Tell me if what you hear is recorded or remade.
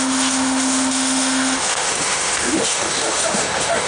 remade